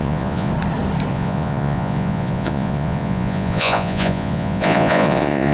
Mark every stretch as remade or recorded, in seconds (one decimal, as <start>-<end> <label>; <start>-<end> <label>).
0.0-0.5 remade; 0.5-1.1 recorded; 1.1-5.5 remade